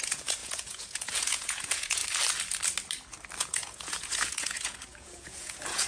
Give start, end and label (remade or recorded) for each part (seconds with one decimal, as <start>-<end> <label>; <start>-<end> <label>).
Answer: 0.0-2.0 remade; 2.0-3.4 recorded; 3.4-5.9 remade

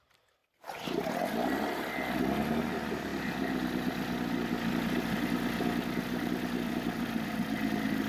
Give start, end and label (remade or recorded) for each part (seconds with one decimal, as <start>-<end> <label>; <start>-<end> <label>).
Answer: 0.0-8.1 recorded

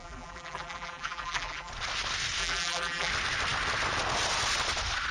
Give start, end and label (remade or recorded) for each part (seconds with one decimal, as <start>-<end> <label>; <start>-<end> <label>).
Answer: 0.0-1.7 remade; 1.7-2.4 recorded; 2.4-3.1 remade; 3.1-5.1 recorded

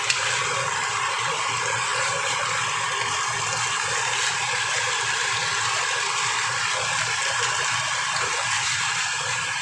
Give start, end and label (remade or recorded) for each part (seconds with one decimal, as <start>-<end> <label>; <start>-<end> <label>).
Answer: 0.0-9.6 remade